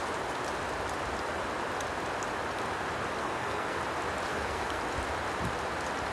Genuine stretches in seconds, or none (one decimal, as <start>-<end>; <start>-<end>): 0.0-3.2; 3.8-4.3; 4.8-6.1